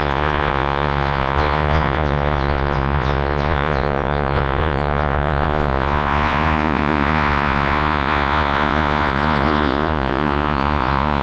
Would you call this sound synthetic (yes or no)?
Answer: yes